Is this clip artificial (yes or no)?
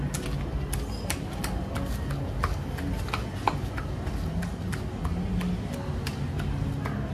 no